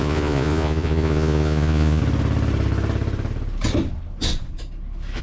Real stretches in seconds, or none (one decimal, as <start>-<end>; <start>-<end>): 2.0-5.2